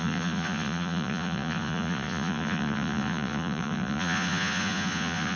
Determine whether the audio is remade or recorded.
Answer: remade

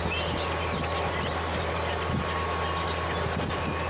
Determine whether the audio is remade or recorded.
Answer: recorded